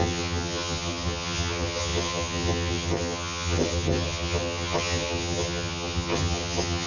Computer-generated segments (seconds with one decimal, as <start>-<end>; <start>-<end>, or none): 0.0-6.9